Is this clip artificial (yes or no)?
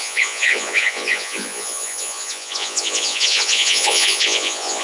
yes